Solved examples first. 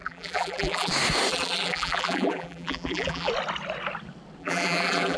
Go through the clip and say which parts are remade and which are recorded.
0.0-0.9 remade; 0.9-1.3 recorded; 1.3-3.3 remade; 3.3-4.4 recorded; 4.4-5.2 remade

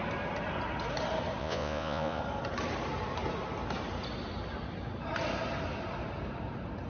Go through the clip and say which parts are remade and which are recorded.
0.0-1.4 recorded; 1.4-2.2 remade; 2.2-6.9 recorded

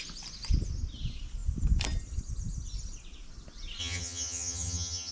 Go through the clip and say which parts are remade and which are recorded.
0.0-3.8 recorded; 3.8-5.1 remade

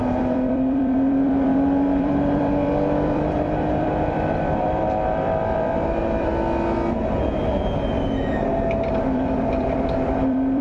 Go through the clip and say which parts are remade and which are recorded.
0.0-6.3 remade; 6.3-8.9 recorded; 8.9-10.6 remade

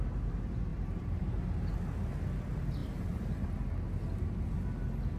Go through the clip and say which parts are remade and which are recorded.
0.0-0.7 recorded; 0.7-1.7 remade; 1.7-2.8 recorded; 2.8-3.5 remade; 3.5-5.2 recorded

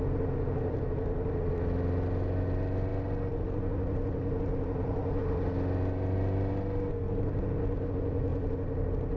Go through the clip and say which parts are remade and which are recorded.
0.0-6.9 recorded; 6.9-7.4 remade; 7.4-9.2 recorded

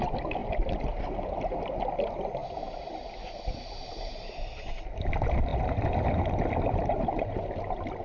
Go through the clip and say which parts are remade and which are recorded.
0.0-0.4 recorded; 0.4-1.0 remade; 1.0-5.5 recorded; 5.5-7.1 remade; 7.1-8.0 recorded